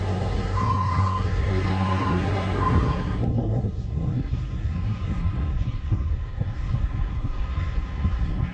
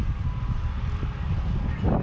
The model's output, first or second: first